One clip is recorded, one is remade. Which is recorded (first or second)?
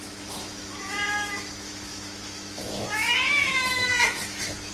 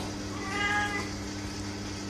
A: second